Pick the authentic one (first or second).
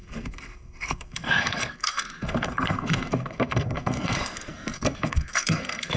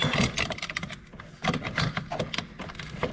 second